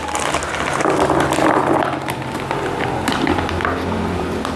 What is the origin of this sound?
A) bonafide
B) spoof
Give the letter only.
A